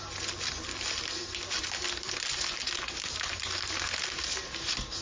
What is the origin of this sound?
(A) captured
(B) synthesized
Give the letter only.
A